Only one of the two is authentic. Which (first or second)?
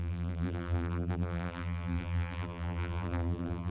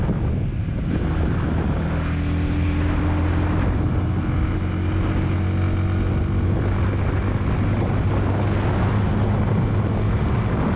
second